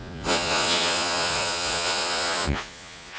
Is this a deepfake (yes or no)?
yes